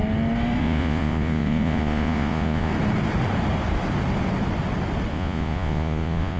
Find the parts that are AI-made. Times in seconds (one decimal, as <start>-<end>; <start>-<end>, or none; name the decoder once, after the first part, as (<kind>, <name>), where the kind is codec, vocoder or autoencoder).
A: 0.6-2.7 (vocoder, Vocos); 5.1-6.4